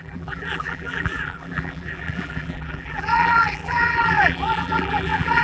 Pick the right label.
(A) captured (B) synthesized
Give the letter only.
B